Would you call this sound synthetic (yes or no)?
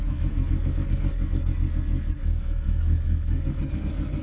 yes